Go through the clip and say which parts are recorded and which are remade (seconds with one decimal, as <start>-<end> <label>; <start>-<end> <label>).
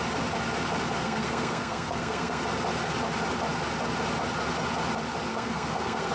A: 0.0-1.0 recorded; 1.0-2.4 remade; 2.4-5.3 recorded; 5.3-6.1 remade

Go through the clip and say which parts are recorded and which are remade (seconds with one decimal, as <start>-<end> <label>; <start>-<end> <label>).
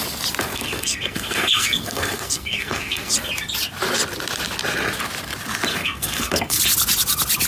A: 0.0-0.5 recorded; 0.5-3.1 remade; 3.1-5.7 recorded; 5.7-6.6 remade; 6.6-7.5 recorded